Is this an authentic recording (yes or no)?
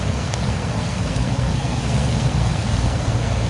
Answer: no